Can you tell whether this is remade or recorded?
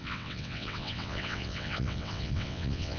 remade